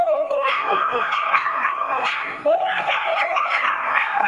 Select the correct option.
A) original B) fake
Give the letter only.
B